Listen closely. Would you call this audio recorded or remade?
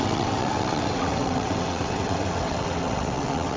remade